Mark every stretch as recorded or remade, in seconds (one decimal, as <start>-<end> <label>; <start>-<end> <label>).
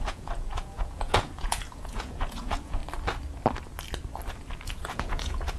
0.0-2.8 remade; 2.8-4.7 recorded; 4.7-5.6 remade